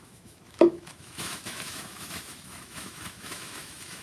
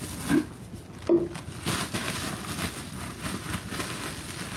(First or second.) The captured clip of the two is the second